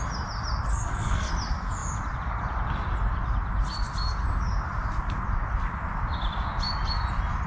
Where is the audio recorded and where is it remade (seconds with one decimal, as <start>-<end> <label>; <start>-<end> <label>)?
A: 0.0-0.7 recorded; 0.7-1.3 remade; 1.3-7.5 recorded